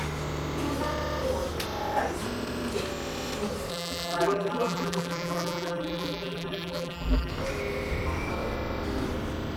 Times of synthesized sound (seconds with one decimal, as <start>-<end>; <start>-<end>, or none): 3.7-7.3